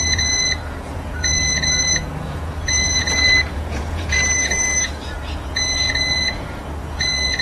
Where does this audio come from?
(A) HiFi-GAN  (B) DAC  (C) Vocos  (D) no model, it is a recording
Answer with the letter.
C